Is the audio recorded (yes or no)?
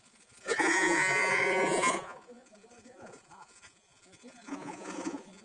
no